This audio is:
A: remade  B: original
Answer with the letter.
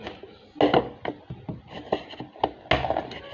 B